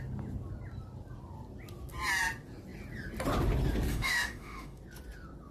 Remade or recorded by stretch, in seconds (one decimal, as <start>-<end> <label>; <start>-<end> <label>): 0.0-3.9 recorded; 3.9-4.8 remade; 4.8-5.5 recorded